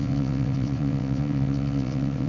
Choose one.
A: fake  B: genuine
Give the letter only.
A